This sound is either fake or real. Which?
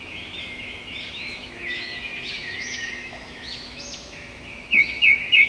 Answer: fake